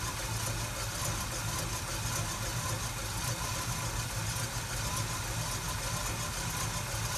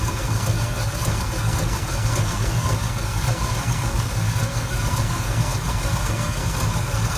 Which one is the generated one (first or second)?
second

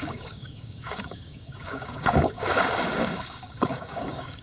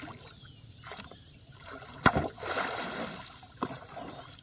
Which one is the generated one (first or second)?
first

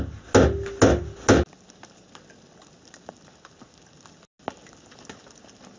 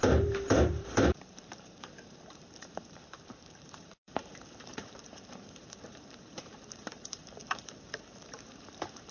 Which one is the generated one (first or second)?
second